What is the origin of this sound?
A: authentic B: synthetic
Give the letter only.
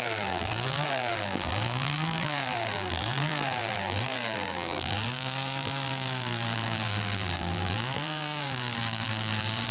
B